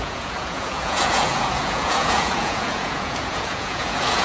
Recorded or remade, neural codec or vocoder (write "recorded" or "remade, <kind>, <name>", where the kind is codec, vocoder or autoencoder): remade, vocoder, Vocos